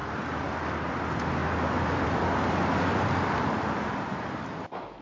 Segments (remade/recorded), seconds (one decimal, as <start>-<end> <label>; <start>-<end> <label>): 0.0-0.6 remade; 0.6-1.4 recorded; 1.4-4.4 remade; 4.4-5.0 recorded